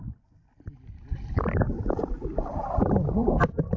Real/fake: fake